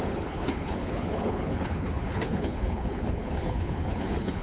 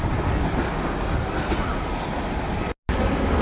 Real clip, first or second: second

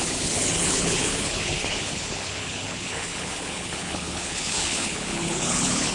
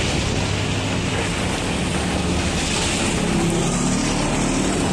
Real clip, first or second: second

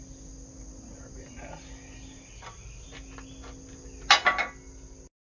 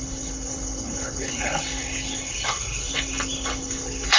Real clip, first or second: first